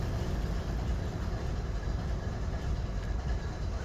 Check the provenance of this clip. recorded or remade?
recorded